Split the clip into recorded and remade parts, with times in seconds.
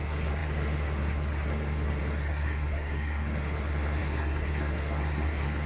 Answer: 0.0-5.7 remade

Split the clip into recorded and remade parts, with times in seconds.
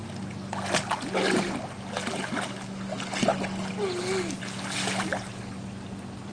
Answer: 0.0-6.3 recorded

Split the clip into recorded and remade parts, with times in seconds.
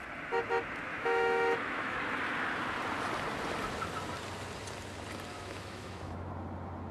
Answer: 0.0-0.9 recorded; 0.9-2.0 remade; 2.0-5.3 recorded; 5.3-6.3 remade; 6.3-6.9 recorded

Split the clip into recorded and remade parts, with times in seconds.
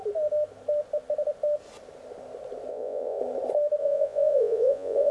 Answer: 0.0-2.7 recorded; 2.7-3.2 remade; 3.2-3.8 recorded; 3.8-5.1 remade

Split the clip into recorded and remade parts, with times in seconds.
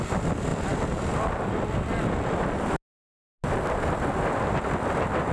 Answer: 0.0-5.3 recorded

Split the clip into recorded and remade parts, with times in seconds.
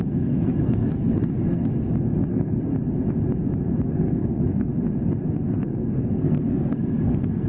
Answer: 0.0-1.7 remade; 1.7-2.3 recorded; 2.3-2.7 remade; 2.7-3.9 recorded; 3.9-4.7 remade; 4.7-5.3 recorded; 5.3-7.5 remade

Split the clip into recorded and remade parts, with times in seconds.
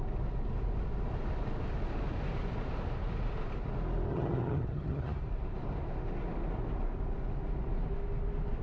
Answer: 0.0-4.1 recorded; 4.1-5.2 remade; 5.2-8.6 recorded